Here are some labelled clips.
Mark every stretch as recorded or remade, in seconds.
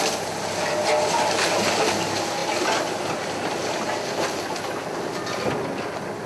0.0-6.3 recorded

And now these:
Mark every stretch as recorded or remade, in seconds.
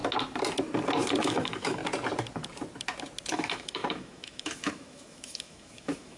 0.0-1.2 recorded; 1.2-1.8 remade; 1.8-3.3 recorded; 3.3-6.2 remade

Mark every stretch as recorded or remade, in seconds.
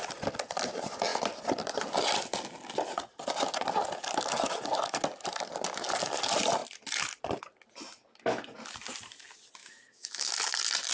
0.0-9.6 recorded; 9.6-10.3 remade; 10.3-10.9 recorded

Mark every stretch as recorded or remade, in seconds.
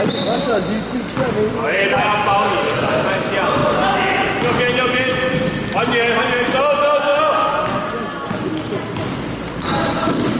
0.0-10.4 recorded